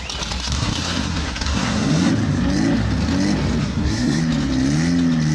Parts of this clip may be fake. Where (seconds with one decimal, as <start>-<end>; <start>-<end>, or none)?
0.4-2.1; 3.6-4.2